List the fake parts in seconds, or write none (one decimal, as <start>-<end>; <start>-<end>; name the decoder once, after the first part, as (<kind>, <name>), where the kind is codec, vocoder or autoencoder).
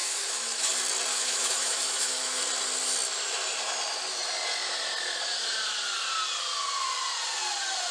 0.0-0.7 (autoencoder, DAC-VAE); 1.1-2.4